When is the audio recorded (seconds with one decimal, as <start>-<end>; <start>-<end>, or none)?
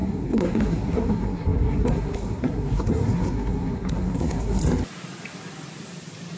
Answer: 4.6-6.4